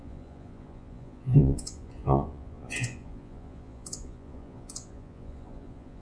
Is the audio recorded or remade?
remade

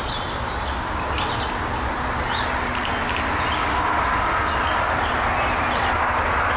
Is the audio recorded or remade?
recorded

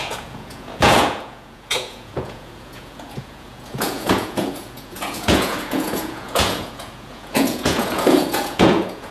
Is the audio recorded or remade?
remade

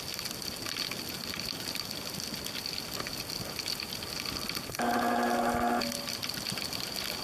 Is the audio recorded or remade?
recorded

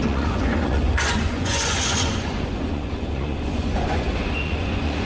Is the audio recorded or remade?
remade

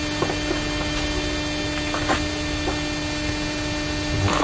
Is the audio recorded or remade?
recorded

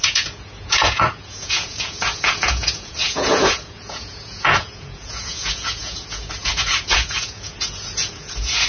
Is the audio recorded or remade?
remade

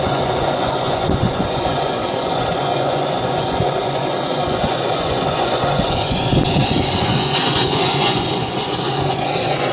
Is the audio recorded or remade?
remade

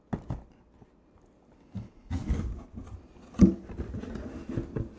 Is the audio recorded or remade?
recorded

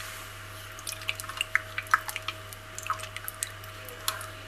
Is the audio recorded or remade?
recorded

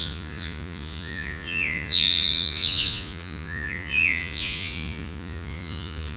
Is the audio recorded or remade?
remade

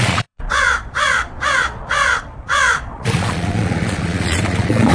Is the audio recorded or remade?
remade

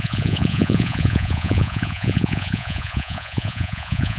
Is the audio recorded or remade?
remade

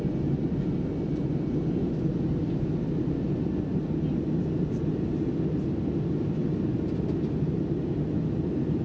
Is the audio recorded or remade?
recorded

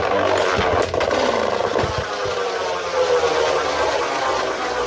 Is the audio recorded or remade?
recorded